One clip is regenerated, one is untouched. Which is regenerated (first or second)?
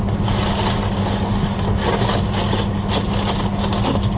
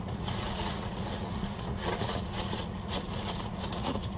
second